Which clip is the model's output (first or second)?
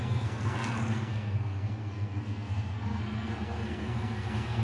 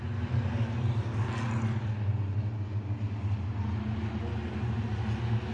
first